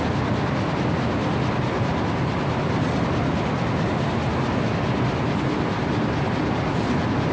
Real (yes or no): yes